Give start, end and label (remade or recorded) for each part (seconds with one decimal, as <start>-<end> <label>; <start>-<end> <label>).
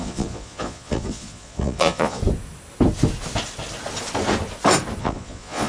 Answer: 0.0-2.2 remade; 2.2-5.0 recorded; 5.0-5.7 remade